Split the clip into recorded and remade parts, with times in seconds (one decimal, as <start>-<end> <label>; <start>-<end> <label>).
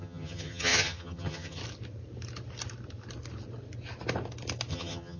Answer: 0.0-1.6 remade; 1.6-4.7 recorded; 4.7-5.2 remade